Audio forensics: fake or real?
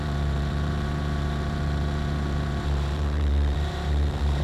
fake